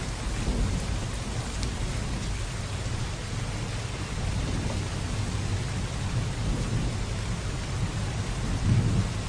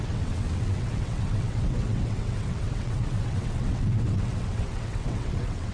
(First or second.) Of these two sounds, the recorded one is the first